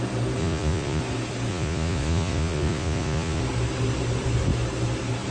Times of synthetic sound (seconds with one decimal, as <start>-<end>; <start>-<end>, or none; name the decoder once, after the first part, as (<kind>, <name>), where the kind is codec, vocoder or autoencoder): 0.4-1.0 (vocoder, Vocos); 1.5-3.4

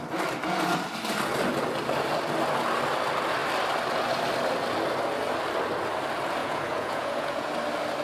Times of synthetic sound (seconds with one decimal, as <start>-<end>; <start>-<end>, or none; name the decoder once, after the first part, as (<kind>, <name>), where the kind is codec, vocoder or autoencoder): 6.4-7.5 (vocoder, Vocos)

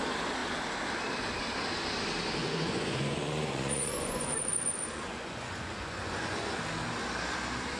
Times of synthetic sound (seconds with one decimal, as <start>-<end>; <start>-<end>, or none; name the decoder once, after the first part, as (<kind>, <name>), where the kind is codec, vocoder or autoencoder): 2.4-6.6 (vocoder, Vocos)

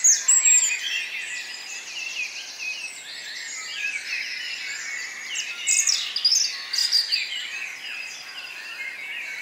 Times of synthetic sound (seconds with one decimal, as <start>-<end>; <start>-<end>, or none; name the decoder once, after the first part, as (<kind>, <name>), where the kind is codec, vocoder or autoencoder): none

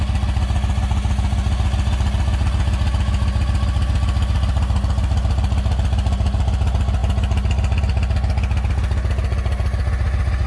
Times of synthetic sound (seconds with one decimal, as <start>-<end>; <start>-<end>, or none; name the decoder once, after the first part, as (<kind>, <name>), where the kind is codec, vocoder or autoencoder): none

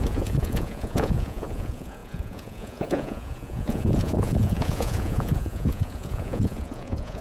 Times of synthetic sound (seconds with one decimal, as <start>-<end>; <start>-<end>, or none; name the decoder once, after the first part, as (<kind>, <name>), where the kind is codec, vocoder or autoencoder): 0.0-7.2 (vocoder, Vocos)

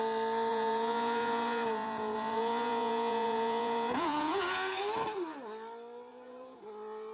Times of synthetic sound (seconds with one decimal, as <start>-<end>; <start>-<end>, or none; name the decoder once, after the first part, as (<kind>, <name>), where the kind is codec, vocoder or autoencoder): 0.5-4.8 (vocoder, Vocos); 6.1-6.6